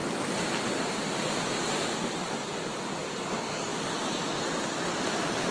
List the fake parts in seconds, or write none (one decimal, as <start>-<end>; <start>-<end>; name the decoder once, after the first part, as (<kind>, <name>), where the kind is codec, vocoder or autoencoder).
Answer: none